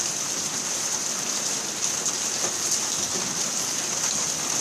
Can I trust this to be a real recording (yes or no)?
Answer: yes